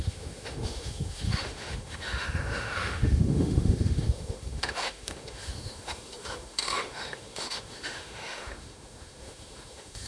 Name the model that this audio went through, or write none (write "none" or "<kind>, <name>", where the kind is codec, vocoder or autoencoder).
autoencoder, DAC-VAE